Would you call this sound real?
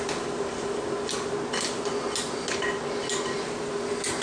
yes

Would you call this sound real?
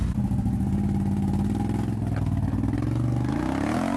yes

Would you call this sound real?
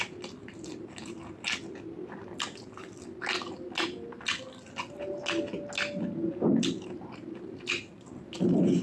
yes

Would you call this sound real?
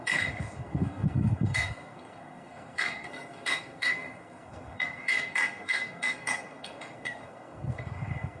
no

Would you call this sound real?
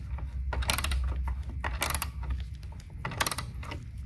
yes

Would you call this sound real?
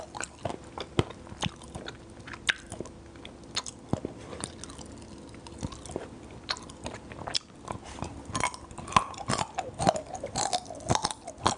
yes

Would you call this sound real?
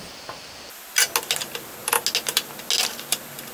yes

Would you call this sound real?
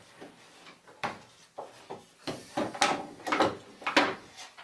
yes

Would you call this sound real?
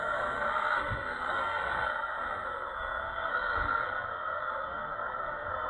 no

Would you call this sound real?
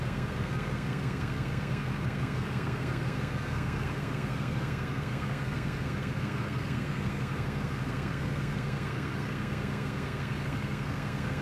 no